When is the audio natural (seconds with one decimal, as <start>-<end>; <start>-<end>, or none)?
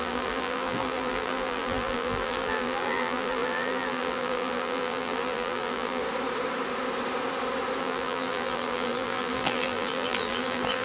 6.0-7.8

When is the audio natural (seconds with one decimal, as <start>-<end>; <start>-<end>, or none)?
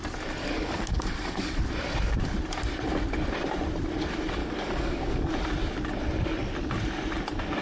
0.0-0.4; 1.6-4.4; 5.3-7.6